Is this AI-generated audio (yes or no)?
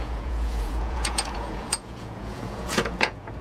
yes